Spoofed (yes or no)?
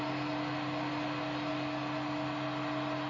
no